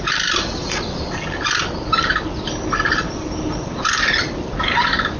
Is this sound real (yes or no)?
yes